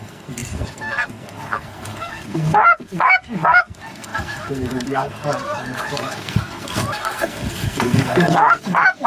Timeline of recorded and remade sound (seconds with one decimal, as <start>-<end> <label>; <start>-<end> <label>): 0.0-9.1 remade